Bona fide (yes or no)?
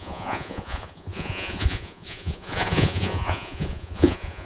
no